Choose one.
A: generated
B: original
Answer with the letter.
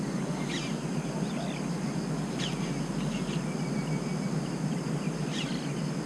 B